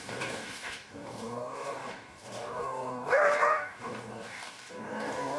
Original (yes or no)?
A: no